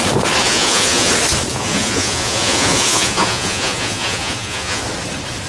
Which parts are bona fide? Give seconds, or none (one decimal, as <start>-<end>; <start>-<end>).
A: 0.0-0.4; 1.1-1.5; 4.8-5.5